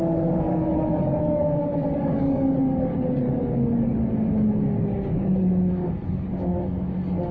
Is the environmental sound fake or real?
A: fake